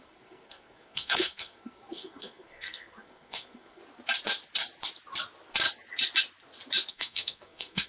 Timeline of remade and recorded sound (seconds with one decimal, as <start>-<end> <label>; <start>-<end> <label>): 0.0-3.8 remade; 3.8-6.9 recorded; 6.9-7.9 remade